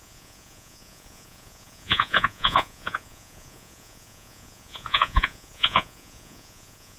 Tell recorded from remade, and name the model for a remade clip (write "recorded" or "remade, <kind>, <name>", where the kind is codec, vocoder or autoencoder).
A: remade, vocoder, Vocos